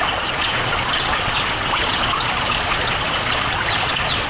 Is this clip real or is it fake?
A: fake